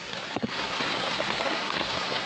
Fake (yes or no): yes